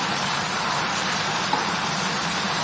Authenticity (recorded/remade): remade